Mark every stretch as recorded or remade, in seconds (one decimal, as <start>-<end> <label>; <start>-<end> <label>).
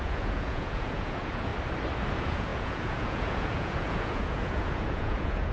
0.0-1.5 remade; 1.5-2.1 recorded; 2.1-5.5 remade